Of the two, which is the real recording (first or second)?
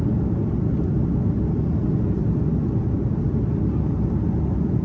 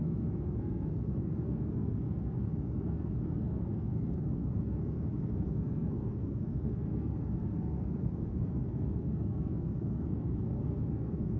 first